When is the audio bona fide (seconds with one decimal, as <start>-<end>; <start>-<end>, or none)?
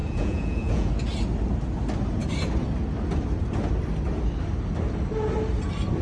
0.9-6.0